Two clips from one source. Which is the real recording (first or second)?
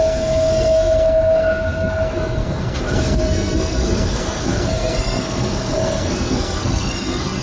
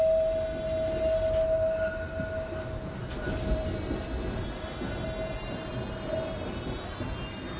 second